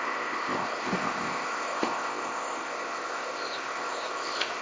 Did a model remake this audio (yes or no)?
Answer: yes